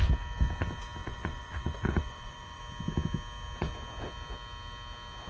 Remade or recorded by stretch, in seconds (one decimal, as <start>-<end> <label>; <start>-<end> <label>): 0.0-1.0 recorded; 1.0-2.6 remade; 2.6-5.3 recorded